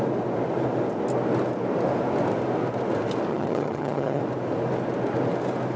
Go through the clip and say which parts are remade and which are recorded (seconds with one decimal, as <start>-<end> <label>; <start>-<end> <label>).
0.0-3.3 recorded; 3.3-4.2 remade; 4.2-5.8 recorded